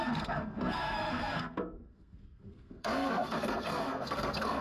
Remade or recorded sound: remade